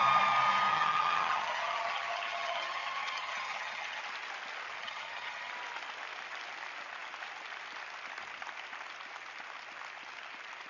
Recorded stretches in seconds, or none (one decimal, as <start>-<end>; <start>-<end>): 0.0-0.7; 4.0-4.8; 5.5-10.7